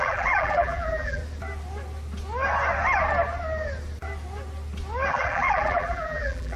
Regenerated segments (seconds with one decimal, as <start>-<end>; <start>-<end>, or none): 0.0-1.2; 5.1-6.6